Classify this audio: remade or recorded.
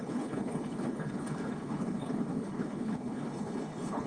remade